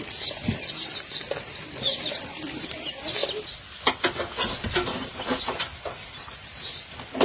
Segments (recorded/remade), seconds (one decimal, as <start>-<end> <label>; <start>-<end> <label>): 0.0-3.2 remade; 3.2-5.4 recorded; 5.4-7.2 remade